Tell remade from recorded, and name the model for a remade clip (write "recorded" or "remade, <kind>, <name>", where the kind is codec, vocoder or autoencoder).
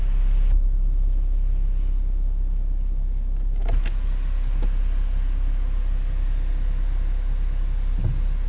recorded